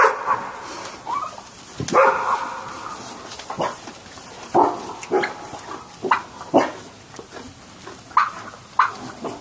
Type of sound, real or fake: real